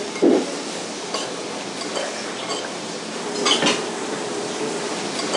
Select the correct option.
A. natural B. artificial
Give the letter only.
A